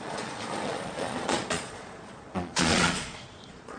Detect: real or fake fake